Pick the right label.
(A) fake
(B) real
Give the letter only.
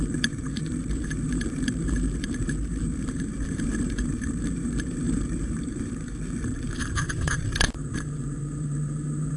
A